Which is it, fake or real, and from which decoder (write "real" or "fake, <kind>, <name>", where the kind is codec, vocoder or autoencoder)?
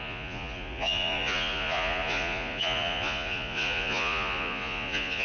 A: fake, vocoder, Vocos